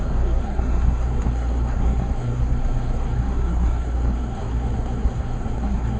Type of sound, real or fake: fake